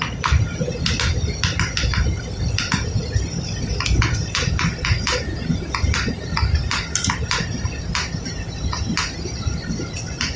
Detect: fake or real real